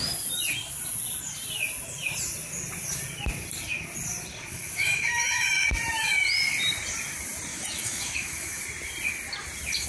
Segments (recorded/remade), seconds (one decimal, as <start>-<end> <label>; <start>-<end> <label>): 0.0-4.5 recorded; 4.5-5.6 remade; 5.6-7.5 recorded; 7.5-8.6 remade; 8.6-9.9 recorded